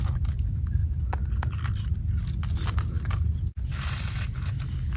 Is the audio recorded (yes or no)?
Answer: yes